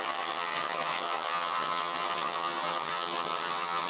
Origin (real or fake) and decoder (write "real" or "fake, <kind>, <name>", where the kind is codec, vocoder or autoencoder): fake, vocoder, HiFi-GAN